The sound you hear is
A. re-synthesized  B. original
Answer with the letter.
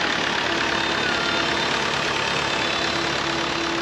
B